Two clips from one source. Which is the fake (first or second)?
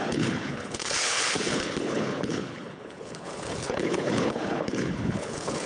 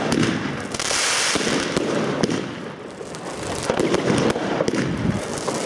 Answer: first